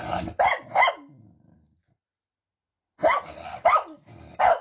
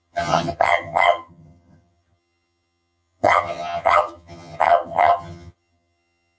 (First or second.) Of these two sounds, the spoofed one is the second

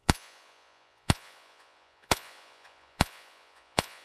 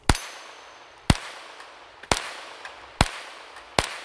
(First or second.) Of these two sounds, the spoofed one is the first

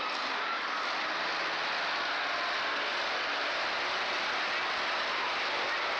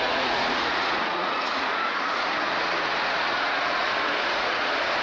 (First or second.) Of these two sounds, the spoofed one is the second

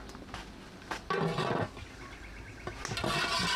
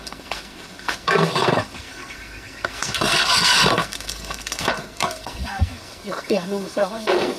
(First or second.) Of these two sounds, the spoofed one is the second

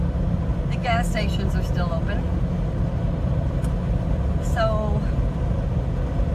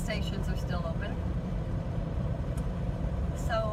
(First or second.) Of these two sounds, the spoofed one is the second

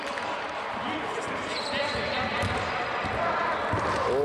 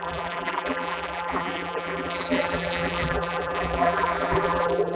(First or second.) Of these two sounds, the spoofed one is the second